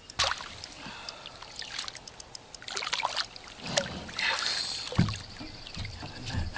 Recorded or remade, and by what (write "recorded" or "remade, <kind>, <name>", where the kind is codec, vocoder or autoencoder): recorded